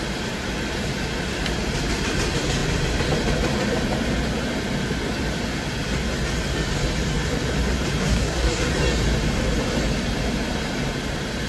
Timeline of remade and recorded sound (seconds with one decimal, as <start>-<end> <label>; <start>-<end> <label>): 0.0-8.0 recorded; 8.0-8.7 remade; 8.7-11.5 recorded